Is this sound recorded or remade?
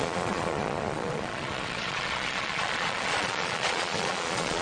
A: remade